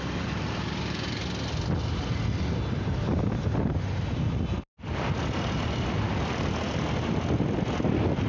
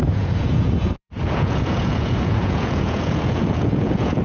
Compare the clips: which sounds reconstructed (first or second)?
second